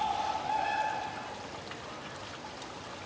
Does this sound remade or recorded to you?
recorded